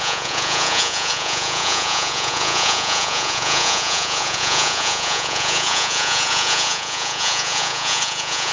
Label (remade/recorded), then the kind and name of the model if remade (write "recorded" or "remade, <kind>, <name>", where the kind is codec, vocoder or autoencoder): remade, vocoder, Vocos